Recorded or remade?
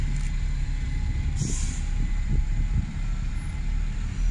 remade